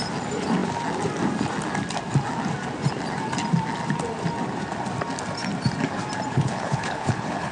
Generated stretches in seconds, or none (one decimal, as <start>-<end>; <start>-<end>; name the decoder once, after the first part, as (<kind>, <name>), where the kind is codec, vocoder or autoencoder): 6.3-7.5 (codec, HILCodec)